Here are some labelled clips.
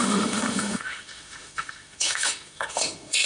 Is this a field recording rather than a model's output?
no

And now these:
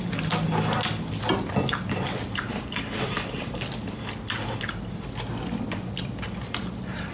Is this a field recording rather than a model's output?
yes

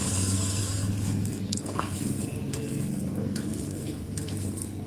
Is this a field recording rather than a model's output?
no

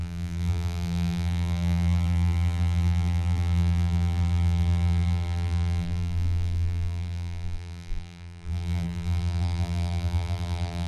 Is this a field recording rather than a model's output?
no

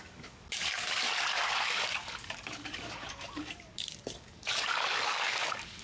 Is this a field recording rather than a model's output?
no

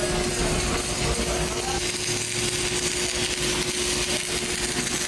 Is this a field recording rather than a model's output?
yes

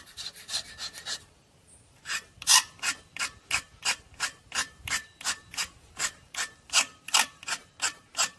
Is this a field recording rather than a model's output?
no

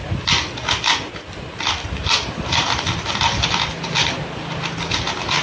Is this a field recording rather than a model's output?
yes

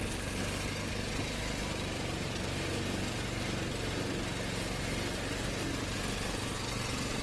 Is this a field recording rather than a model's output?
yes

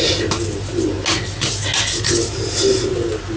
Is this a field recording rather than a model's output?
yes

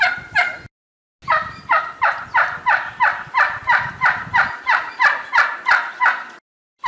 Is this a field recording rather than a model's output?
yes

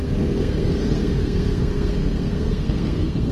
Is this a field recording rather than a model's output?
no